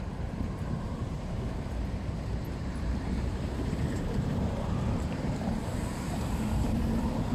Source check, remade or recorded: remade